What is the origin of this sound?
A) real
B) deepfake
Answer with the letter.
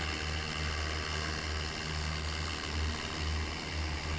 A